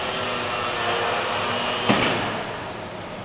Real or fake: real